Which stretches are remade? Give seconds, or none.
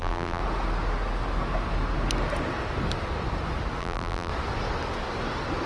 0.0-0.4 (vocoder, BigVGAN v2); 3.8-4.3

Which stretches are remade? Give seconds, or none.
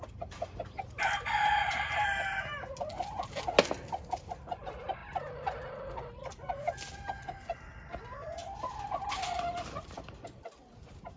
none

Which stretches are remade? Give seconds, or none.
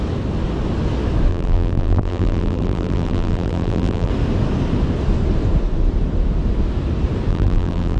1.3-4.1 (vocoder, BigVGAN v2); 7.3-8.0